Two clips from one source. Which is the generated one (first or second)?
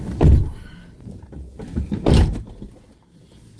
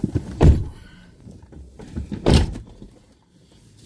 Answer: second